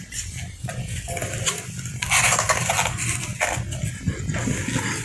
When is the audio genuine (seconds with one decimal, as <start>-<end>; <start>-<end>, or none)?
0.0-5.0